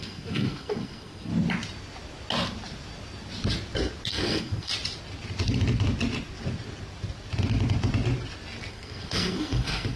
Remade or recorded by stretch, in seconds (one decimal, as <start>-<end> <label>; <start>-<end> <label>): 0.0-1.3 remade; 1.3-4.1 recorded; 4.1-4.7 remade; 4.7-8.7 recorded; 8.7-10.0 remade